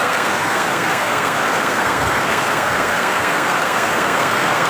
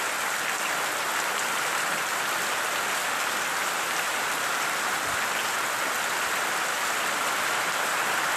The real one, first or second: second